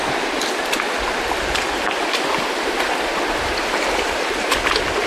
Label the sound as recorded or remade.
recorded